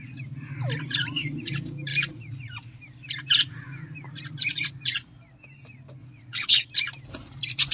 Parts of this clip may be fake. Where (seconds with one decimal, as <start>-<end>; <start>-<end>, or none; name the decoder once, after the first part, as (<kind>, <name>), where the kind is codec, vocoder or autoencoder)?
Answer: 6.0-6.6 (vocoder, WaveNeXt)